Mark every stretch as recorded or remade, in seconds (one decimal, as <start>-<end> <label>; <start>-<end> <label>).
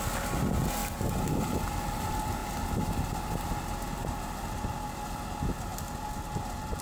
0.0-6.8 recorded